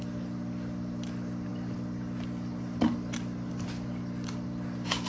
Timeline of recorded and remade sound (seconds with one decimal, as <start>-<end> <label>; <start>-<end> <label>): 0.0-5.1 recorded